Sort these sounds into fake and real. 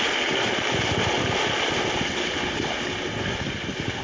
real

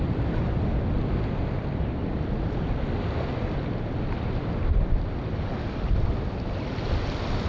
real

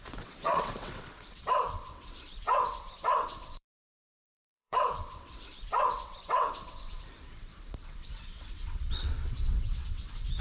fake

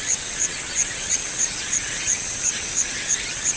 fake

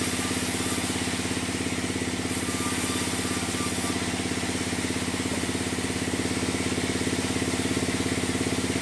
real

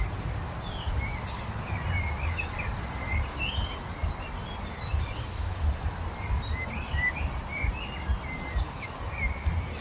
real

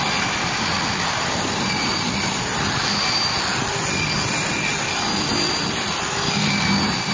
real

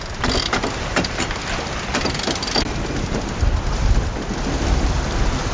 real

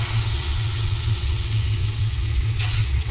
fake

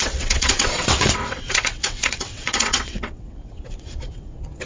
fake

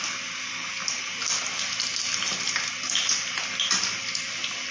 real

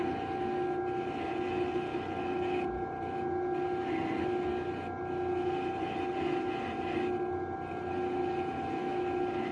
real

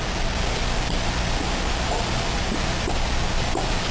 real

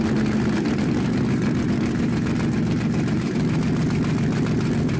real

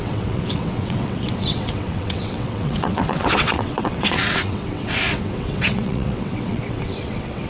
fake